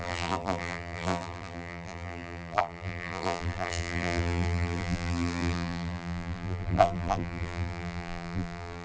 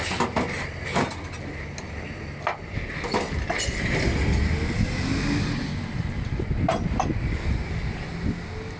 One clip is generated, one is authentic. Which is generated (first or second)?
first